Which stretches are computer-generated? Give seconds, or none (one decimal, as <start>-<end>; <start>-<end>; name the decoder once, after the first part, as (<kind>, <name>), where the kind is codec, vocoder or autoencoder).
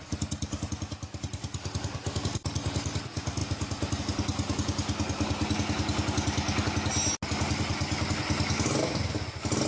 none